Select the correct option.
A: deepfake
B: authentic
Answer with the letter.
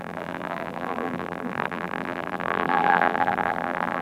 A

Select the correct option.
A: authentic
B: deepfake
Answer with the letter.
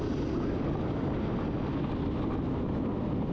A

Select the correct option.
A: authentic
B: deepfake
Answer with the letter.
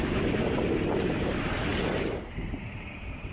B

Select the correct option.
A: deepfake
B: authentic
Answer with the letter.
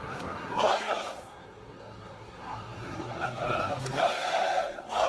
A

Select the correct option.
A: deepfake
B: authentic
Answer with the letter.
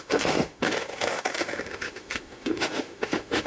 A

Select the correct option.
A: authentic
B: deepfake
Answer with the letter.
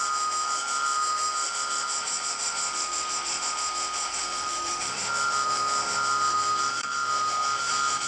B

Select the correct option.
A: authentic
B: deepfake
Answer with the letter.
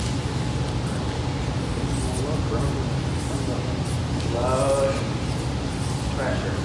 A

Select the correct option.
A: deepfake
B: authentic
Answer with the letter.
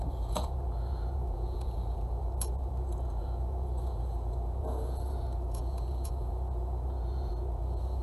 A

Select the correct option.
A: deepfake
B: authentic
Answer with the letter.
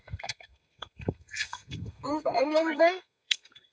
A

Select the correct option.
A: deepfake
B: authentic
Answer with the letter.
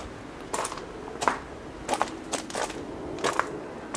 B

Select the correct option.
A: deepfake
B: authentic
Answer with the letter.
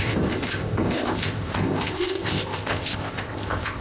A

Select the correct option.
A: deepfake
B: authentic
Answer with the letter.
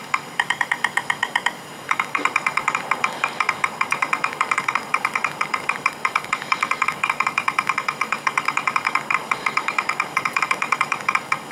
A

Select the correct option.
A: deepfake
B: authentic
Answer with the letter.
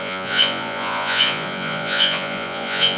A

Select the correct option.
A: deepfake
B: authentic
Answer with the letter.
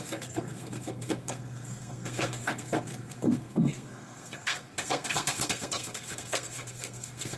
A